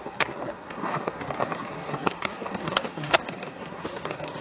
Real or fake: fake